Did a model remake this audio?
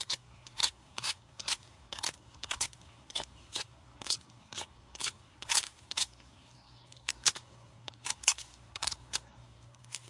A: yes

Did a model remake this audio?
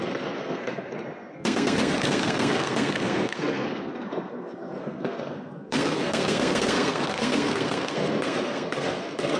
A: yes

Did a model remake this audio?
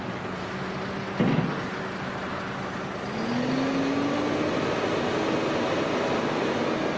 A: no